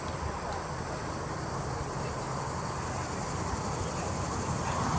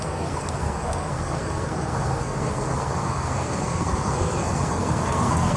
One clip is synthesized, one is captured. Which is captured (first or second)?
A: first